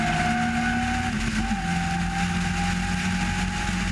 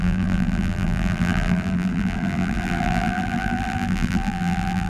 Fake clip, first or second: second